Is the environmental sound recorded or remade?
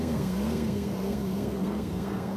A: remade